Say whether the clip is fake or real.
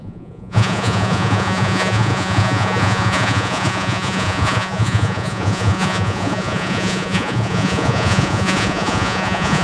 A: fake